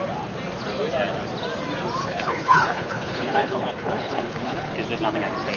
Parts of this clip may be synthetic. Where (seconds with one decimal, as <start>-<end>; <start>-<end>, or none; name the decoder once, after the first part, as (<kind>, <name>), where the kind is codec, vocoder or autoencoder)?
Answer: 2.0-4.7 (codec, HILCodec)